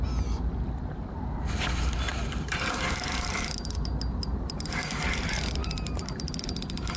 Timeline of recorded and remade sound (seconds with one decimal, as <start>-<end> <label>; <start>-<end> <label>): 0.0-2.1 recorded; 2.1-3.3 remade; 3.3-5.6 recorded; 5.6-6.3 remade; 6.3-7.0 recorded